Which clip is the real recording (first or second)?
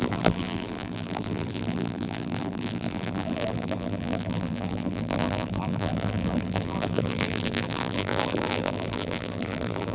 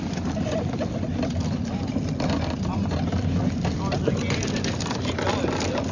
second